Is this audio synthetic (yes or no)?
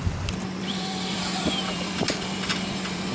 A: yes